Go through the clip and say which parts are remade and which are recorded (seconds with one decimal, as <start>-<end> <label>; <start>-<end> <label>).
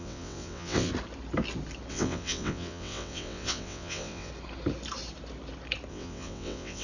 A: 0.0-0.9 remade; 0.9-1.9 recorded; 1.9-4.3 remade; 4.3-5.9 recorded; 5.9-6.8 remade